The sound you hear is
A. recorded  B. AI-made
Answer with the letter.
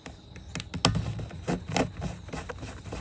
A